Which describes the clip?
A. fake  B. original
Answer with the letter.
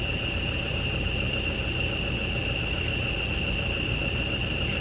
B